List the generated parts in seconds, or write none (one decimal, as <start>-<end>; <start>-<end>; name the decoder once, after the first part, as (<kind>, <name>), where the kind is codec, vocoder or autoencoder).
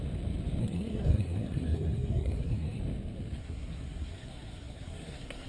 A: 0.6-2.8 (codec, SNAC); 3.4-5.5